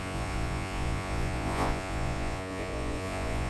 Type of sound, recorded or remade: remade